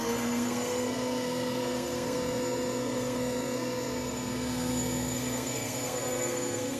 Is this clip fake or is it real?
fake